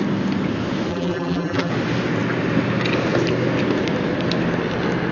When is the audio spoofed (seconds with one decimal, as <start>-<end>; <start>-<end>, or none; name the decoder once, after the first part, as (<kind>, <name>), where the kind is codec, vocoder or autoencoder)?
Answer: 0.9-1.7 (vocoder, BigVGAN v2)